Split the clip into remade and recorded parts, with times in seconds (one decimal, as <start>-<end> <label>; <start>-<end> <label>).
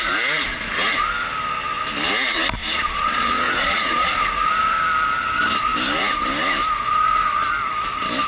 0.0-2.6 recorded; 2.6-4.2 remade; 4.2-8.3 recorded